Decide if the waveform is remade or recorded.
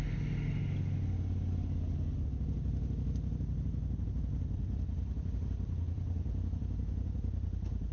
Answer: recorded